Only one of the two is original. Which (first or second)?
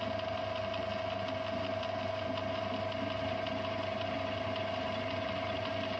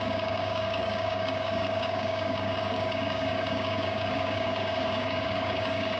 first